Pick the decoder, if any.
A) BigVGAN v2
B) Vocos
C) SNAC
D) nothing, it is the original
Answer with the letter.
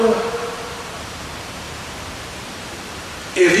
A